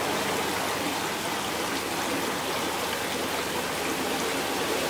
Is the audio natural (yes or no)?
yes